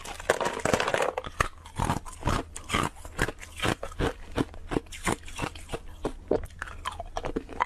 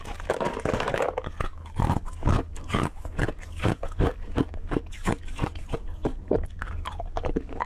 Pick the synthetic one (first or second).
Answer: second